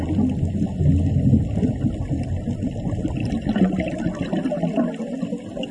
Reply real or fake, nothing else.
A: real